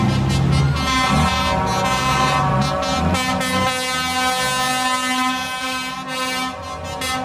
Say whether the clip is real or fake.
real